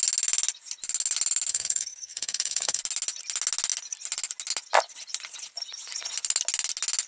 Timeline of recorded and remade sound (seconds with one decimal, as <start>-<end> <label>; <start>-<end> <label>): 0.0-1.5 recorded; 1.5-2.8 remade; 2.8-7.1 recorded